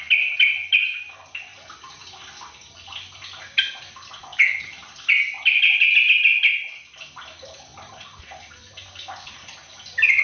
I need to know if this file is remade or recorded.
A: recorded